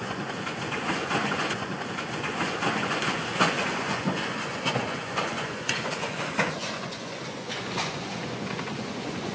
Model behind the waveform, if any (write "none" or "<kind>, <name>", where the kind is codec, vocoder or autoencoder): vocoder, Vocos